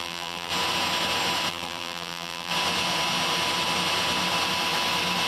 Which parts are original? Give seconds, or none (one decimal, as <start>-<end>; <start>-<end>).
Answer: 0.5-1.5; 2.5-5.3